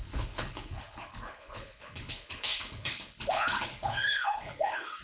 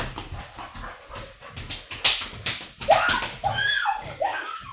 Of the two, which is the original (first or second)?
second